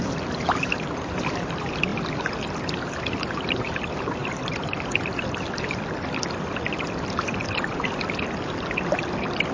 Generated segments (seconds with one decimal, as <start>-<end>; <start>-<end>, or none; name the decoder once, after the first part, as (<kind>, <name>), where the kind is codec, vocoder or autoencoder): none